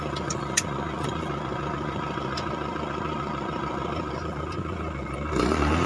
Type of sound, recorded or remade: remade